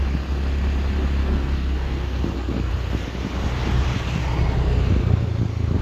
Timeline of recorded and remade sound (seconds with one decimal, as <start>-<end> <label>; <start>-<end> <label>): 0.0-1.2 recorded; 1.2-2.7 remade; 2.7-5.8 recorded